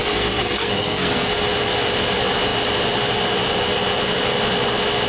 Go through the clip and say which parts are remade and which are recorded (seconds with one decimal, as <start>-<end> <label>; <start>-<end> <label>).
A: 0.0-1.3 remade; 1.3-5.1 recorded